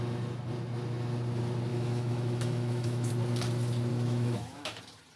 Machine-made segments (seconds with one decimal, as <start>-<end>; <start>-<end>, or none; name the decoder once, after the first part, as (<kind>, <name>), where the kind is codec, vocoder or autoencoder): 1.7-3.1 (autoencoder, DAC-VAE); 3.9-4.8